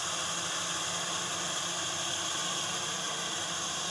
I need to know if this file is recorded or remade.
recorded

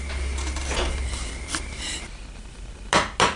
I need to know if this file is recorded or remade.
recorded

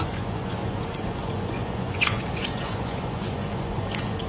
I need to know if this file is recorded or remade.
remade